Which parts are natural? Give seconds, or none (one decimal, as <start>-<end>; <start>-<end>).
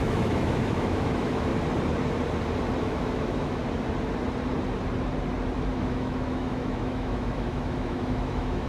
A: 1.5-2.8; 3.6-5.7